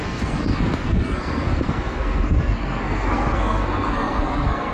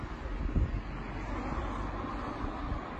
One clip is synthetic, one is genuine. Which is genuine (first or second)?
second